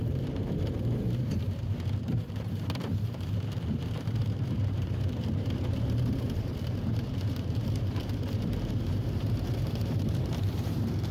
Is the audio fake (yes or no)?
yes